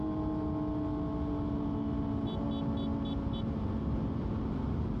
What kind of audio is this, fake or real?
real